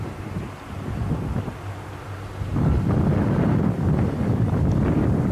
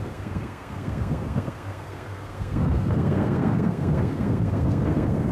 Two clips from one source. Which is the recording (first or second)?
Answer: first